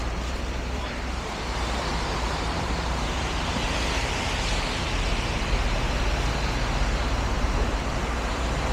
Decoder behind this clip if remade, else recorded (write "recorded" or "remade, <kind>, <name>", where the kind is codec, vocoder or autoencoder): remade, vocoder, BigVGAN v2